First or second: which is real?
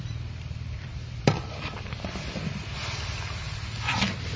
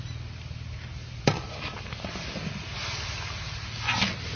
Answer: second